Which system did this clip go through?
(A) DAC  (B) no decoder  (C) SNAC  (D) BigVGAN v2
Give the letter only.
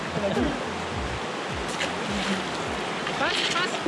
B